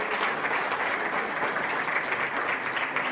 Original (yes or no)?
yes